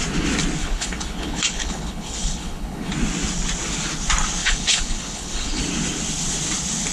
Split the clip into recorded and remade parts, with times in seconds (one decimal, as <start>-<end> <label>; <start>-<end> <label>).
0.0-0.6 recorded; 0.6-2.9 remade; 2.9-4.4 recorded; 4.4-5.6 remade; 5.6-6.9 recorded